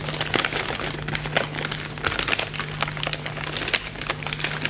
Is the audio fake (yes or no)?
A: no